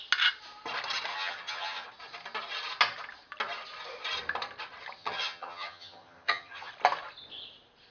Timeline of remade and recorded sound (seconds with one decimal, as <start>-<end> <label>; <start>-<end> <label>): 0.0-1.1 recorded; 1.1-1.9 remade; 1.9-5.0 recorded; 5.0-6.7 remade; 6.7-7.9 recorded